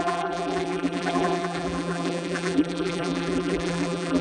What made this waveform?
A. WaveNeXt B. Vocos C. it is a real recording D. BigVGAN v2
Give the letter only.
D